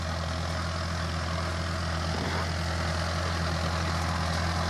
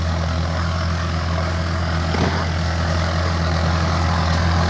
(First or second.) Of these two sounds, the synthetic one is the second